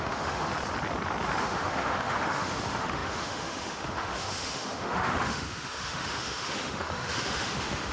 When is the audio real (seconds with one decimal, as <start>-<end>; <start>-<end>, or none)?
0.5-1.4